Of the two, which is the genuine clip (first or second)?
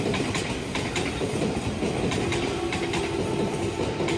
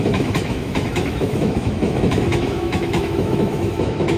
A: first